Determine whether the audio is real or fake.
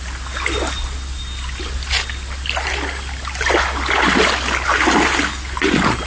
real